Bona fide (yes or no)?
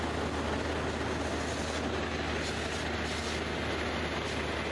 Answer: yes